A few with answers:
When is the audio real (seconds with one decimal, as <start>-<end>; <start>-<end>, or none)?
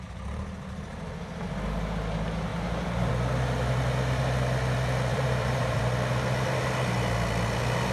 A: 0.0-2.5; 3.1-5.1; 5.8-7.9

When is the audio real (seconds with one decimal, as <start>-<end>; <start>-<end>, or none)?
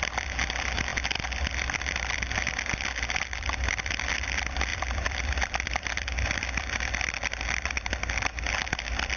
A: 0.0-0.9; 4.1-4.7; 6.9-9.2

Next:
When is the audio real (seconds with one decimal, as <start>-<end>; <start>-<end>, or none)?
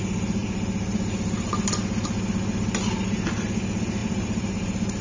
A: 0.0-4.0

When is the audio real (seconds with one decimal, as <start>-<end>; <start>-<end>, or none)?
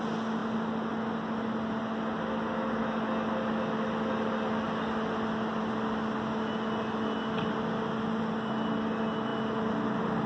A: 0.0-10.3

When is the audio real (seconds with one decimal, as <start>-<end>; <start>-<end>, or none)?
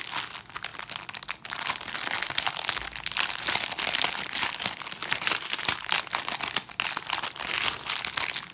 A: 0.0-5.0; 6.0-8.5